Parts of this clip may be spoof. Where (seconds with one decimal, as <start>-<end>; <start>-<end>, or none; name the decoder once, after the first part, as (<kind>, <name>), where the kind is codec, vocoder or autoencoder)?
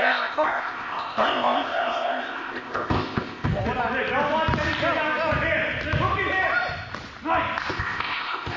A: 0.0-3.6 (codec, ZipCodec); 7.7-8.6